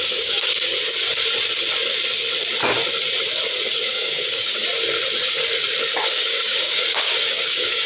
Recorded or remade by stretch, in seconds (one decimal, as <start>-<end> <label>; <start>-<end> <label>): 0.0-0.7 remade; 0.7-3.9 recorded; 3.9-4.6 remade; 4.6-6.1 recorded; 6.1-7.9 remade